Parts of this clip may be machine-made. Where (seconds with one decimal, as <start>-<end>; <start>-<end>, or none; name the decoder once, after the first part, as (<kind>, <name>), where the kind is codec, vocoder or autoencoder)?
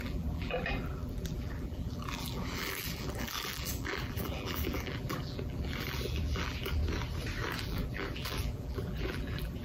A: 0.0-6.8 (vocoder, BigVGAN v2); 7.6-9.6